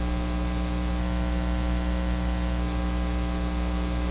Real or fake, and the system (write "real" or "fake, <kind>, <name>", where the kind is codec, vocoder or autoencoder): real